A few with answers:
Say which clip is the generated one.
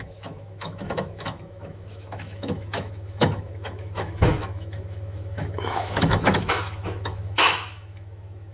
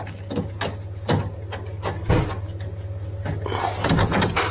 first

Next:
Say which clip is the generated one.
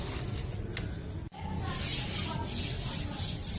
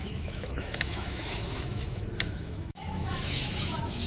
second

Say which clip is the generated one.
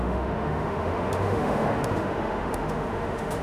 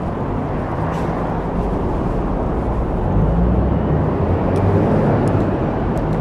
first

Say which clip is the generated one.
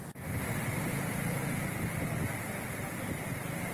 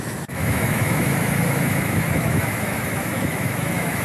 second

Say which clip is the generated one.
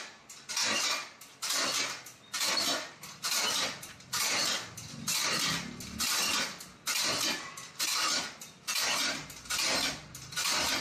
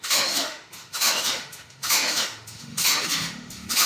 second